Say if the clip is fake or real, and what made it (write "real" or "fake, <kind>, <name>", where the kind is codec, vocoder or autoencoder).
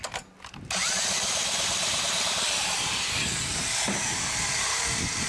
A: real